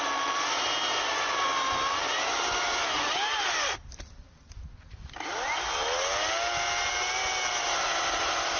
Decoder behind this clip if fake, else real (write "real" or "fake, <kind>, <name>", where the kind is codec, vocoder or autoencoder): real